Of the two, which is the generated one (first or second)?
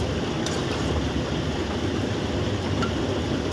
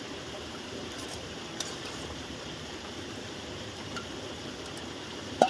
second